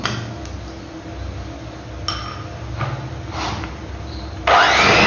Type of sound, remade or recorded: recorded